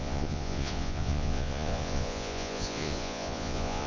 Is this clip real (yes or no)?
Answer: no